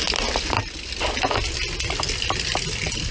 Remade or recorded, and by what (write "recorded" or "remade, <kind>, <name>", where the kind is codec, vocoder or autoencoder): recorded